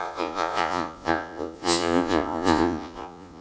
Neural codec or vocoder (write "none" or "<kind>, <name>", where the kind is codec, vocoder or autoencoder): vocoder, Vocos